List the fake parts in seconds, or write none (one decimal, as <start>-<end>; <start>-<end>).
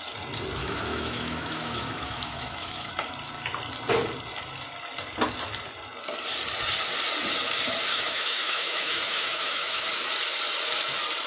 0.6-2.9; 7.9-9.9